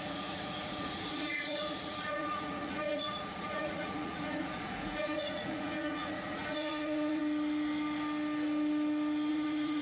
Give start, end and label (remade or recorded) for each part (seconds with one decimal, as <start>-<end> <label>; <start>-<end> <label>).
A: 0.0-7.2 remade; 7.2-9.3 recorded; 9.3-9.8 remade

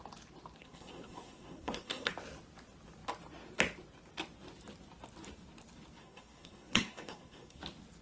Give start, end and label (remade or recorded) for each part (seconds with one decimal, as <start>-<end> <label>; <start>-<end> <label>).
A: 0.0-0.6 recorded; 0.6-2.1 remade; 2.1-6.0 recorded; 6.0-7.6 remade; 7.6-8.0 recorded